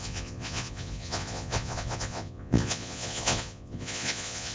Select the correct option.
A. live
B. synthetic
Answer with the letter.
B